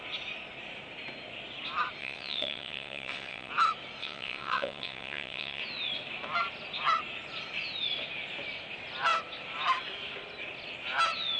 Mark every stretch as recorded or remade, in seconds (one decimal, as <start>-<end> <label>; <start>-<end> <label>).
0.0-2.0 recorded; 2.0-3.5 remade; 3.5-4.0 recorded; 4.0-5.6 remade; 5.6-11.4 recorded